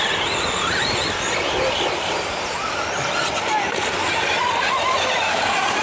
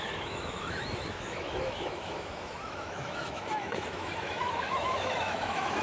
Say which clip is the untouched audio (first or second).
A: first